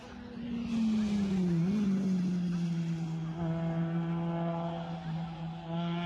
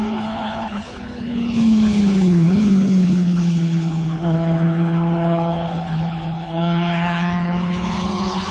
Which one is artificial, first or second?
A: second